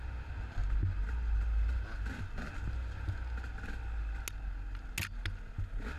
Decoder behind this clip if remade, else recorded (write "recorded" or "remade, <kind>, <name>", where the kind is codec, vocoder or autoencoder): recorded